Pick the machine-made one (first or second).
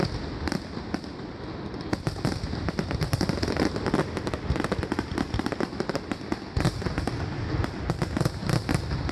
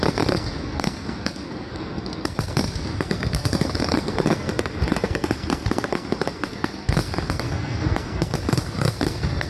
second